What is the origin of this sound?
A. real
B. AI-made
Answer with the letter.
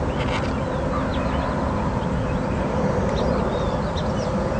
A